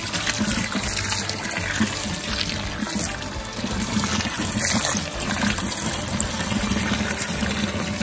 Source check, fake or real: real